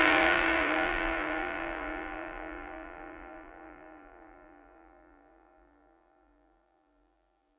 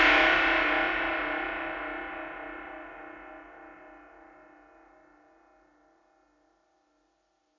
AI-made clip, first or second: first